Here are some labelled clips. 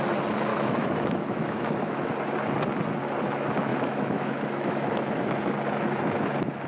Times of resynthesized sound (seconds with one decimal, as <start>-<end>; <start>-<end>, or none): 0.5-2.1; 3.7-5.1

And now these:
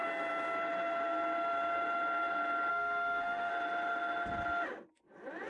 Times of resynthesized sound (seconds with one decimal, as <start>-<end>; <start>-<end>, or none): 2.7-3.5

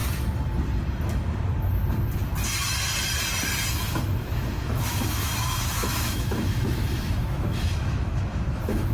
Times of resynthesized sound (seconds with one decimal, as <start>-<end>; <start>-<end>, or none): 3.7-8.9

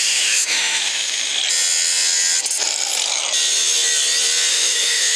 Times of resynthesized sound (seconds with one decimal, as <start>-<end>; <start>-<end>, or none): 0.0-1.4; 4.5-5.2

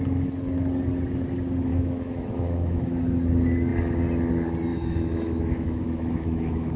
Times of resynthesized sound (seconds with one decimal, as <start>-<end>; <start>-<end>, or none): 1.7-3.0; 4.7-6.8

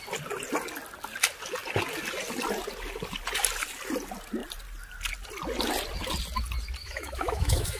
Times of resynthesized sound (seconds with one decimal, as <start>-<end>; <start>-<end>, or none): 6.8-7.8

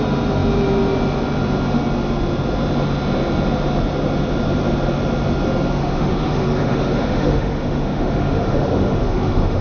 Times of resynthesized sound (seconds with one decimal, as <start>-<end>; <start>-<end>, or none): 5.8-9.6